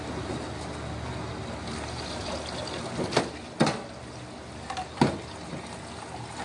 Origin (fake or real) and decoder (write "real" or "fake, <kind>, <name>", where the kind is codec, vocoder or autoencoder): real